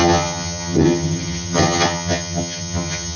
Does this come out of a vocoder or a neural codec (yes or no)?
yes